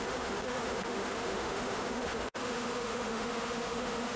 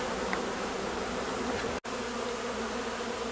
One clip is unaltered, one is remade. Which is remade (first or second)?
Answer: first